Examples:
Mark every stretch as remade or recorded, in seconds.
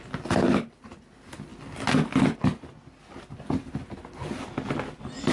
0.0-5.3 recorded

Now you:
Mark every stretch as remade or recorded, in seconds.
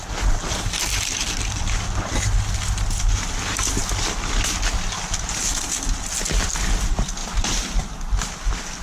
0.0-8.8 recorded